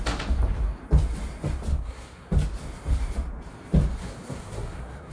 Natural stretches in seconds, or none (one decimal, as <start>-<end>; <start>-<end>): 0.0-1.7; 2.3-4.0